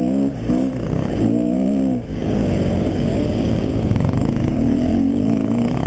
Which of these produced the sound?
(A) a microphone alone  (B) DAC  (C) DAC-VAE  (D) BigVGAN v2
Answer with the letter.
B